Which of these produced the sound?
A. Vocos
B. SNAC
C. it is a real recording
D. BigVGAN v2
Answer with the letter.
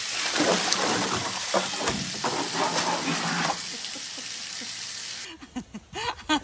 C